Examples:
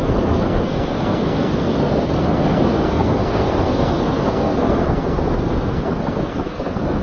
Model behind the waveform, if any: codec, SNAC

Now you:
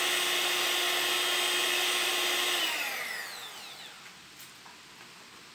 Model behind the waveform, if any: none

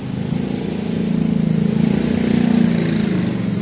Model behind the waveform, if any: none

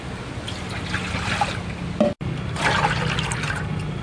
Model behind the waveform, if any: none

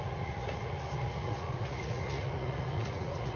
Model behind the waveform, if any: vocoder, Vocos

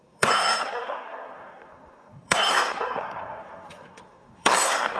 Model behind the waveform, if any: codec, SNAC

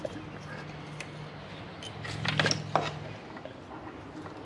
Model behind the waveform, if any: none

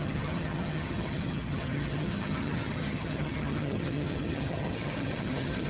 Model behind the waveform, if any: vocoder, HiFi-GAN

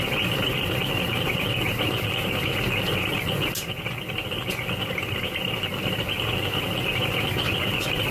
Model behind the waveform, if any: none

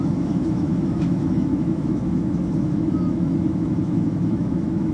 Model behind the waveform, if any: autoencoder, DAC-VAE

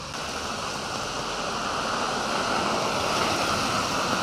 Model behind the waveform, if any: none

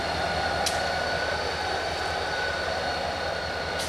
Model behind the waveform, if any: none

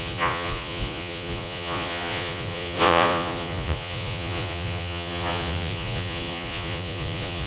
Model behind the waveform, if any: vocoder, Vocos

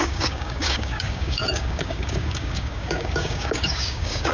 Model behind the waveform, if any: codec, DAC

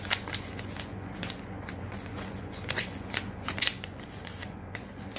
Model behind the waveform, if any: vocoder, Vocos